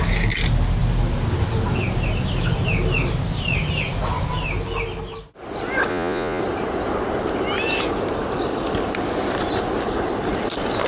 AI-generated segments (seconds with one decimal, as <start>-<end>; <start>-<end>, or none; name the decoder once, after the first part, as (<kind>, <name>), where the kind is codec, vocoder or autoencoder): 5.9-6.4 (vocoder, Vocos)